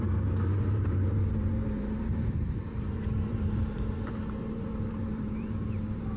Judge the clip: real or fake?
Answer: fake